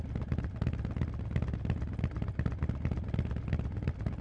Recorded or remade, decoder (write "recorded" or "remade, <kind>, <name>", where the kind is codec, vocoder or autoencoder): recorded